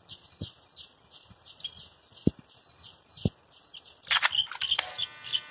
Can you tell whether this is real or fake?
real